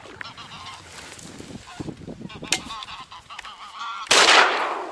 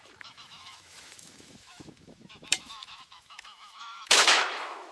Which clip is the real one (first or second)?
first